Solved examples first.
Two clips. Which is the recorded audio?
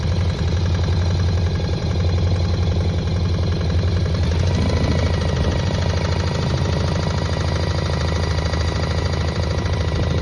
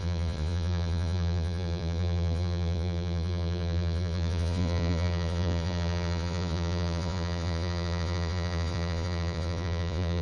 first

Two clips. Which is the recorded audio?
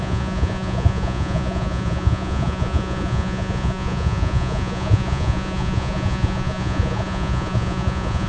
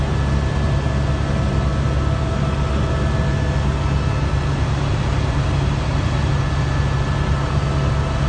second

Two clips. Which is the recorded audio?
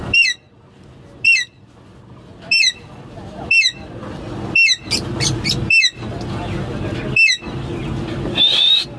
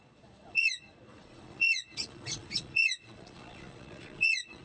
first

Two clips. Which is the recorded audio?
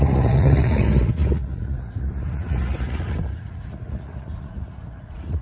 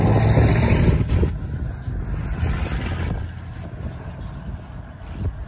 second